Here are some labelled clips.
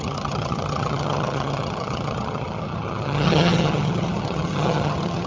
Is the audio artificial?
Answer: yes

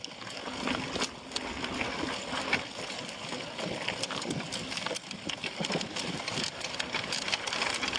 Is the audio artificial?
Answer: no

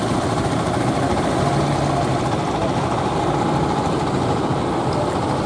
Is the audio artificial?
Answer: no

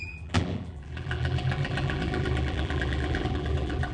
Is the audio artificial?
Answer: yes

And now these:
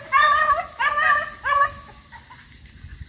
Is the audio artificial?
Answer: no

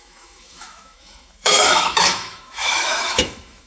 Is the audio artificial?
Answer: yes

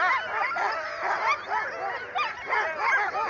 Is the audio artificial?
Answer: no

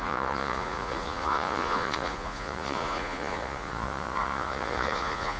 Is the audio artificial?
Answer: yes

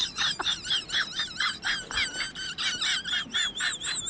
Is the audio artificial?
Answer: no